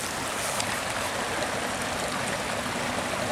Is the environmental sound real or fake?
real